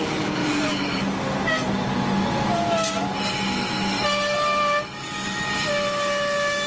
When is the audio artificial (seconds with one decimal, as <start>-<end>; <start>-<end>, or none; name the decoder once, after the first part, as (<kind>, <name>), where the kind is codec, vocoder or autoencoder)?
0.4-1.0 (vocoder, BigVGAN v2)